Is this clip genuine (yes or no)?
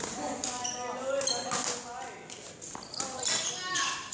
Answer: yes